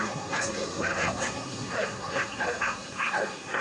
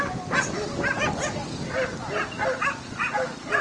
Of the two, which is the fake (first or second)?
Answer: first